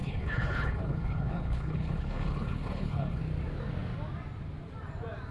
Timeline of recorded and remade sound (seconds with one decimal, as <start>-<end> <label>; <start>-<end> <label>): 0.0-3.2 remade; 3.2-5.3 recorded